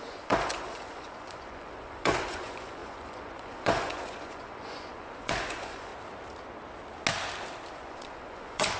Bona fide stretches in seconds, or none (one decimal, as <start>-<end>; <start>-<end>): 5.9-7.7